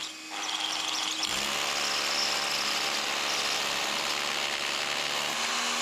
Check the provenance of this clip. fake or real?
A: real